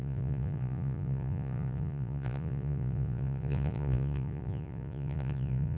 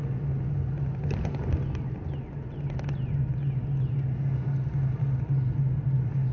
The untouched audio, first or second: second